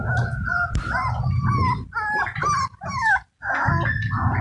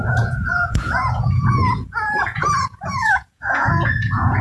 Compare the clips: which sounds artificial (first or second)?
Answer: second